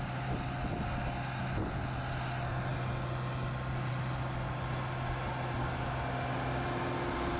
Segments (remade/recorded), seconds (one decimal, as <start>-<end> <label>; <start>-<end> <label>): 0.0-7.4 recorded